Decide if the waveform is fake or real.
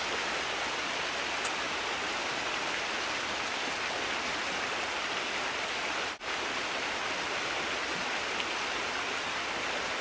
real